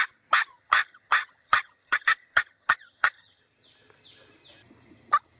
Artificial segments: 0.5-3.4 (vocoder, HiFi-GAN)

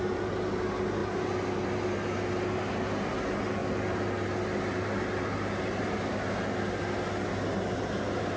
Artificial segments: none

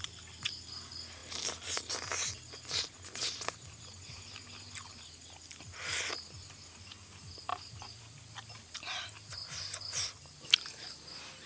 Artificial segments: none

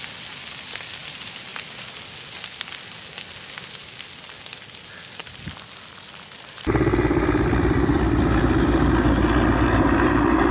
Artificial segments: none

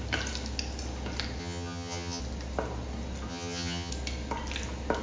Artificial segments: 1.4-2.2 (vocoder, HiFi-GAN); 3.3-3.9